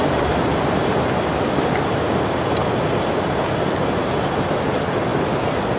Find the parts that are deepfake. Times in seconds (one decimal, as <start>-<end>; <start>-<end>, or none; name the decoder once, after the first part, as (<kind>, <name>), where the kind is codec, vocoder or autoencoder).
none